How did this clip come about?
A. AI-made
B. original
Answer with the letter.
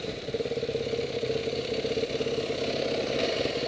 B